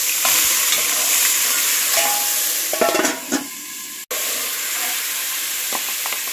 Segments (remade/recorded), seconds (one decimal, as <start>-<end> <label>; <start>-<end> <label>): 0.0-1.2 remade; 1.2-6.3 recorded